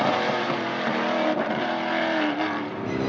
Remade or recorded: remade